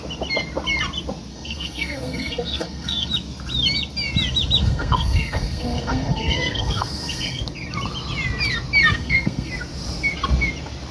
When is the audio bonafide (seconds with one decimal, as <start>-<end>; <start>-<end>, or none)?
0.0-1.3; 3.1-4.6; 7.4-8.9; 9.5-10.9

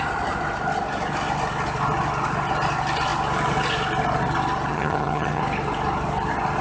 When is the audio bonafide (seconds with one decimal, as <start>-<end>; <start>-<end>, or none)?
0.0-4.7; 5.4-6.6

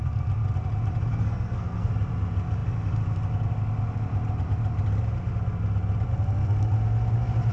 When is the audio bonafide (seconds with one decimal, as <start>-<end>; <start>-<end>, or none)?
0.0-1.1; 1.9-7.5

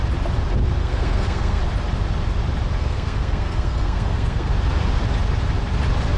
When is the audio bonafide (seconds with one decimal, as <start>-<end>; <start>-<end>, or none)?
0.0-0.8; 1.6-2.8; 4.5-6.2

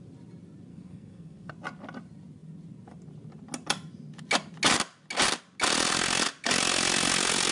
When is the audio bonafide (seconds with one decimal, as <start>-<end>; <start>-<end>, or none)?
0.0-0.7; 1.5-7.5

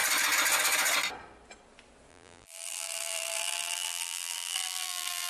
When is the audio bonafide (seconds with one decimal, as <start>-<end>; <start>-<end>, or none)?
0.0-2.1

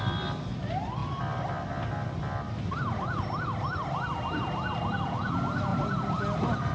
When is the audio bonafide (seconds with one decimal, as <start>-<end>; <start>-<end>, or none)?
0.0-6.7